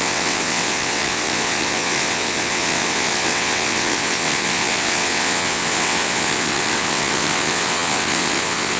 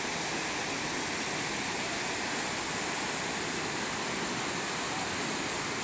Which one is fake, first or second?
first